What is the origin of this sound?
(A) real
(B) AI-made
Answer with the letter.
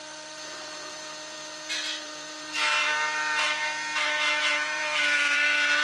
B